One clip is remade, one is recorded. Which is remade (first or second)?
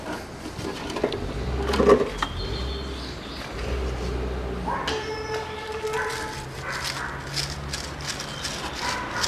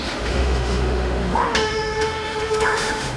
second